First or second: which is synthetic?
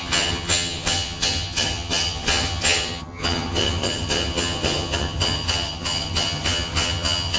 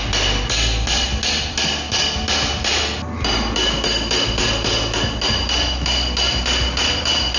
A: first